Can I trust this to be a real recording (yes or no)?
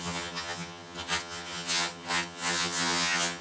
no